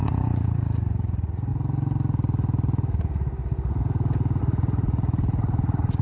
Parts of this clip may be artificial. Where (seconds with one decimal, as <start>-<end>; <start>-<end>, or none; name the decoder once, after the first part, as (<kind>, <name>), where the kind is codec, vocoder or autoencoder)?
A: 0.0-1.5 (vocoder, Vocos); 4.4-6.0